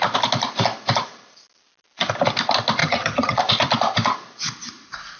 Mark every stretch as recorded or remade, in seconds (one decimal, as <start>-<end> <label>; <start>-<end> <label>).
0.0-2.8 recorded; 2.8-3.4 remade; 3.4-5.2 recorded